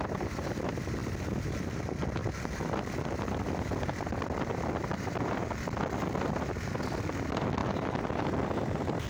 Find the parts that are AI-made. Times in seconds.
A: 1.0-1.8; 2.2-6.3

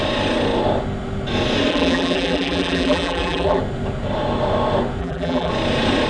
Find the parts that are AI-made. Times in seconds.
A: 1.7-3.6; 5.0-5.5

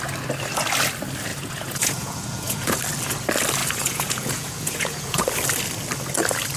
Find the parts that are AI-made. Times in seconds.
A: 1.3-2.8; 3.6-5.2

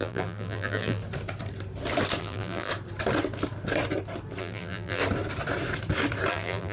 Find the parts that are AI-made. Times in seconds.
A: 0.0-1.0; 2.2-2.7; 4.4-5.0; 6.3-6.7

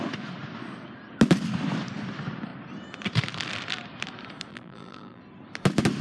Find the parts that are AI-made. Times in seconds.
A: 4.5-5.2

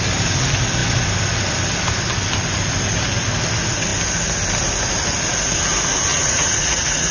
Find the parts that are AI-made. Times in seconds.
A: 6.1-7.1